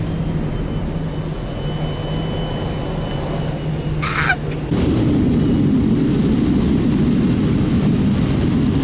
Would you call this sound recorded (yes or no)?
yes